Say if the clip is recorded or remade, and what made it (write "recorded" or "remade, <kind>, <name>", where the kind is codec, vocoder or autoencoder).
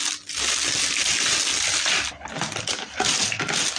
recorded